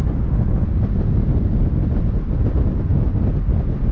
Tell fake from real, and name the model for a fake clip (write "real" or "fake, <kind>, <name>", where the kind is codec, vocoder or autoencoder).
real